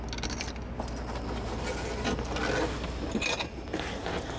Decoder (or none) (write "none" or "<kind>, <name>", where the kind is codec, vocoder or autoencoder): none